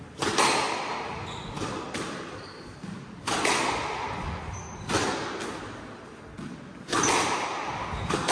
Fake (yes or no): no